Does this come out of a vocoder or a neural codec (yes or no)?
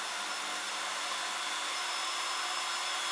no